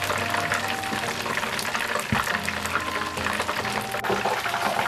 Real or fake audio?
real